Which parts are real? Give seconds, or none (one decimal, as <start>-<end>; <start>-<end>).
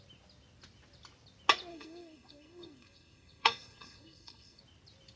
0.0-1.7; 4.6-5.2